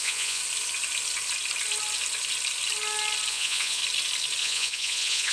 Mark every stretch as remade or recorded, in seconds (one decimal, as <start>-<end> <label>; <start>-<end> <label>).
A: 0.0-0.4 remade; 0.4-3.3 recorded; 3.3-3.8 remade; 3.8-4.4 recorded; 4.4-5.3 remade